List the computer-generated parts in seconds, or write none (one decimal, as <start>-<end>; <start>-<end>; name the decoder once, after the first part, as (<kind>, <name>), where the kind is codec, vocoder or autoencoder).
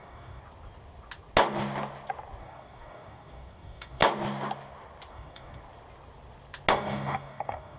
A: 0.0-0.4 (codec, DAC); 2.4-4.0; 5.1-5.6; 6.7-7.8